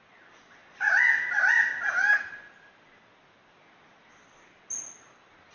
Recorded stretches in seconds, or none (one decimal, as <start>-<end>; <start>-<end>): 0.0-5.5

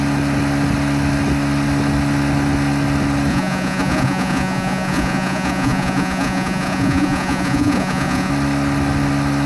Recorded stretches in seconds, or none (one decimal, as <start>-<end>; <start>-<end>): 0.0-3.3; 8.3-9.5